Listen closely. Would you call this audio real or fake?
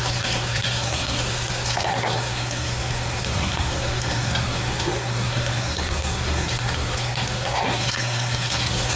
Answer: fake